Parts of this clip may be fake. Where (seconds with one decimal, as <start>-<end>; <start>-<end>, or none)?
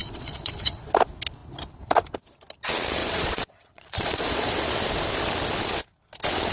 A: 0.0-0.9; 3.0-4.5